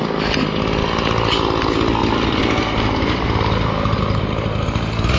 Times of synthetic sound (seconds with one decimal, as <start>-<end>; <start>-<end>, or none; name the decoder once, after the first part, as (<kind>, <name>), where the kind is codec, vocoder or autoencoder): 2.0-5.2 (vocoder, BigVGAN v2)